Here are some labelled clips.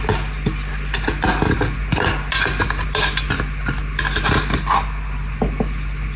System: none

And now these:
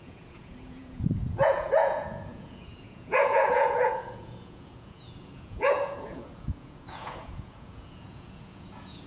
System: vocoder, Vocos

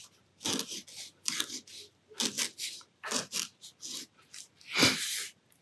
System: none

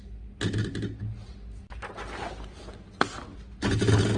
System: none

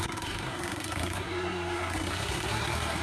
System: codec, SNAC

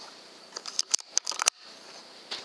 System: none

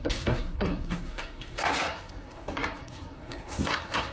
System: codec, SNAC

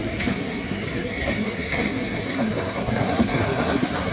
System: codec, SNAC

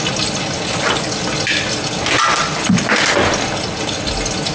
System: none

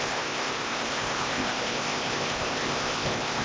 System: codec, ZipCodec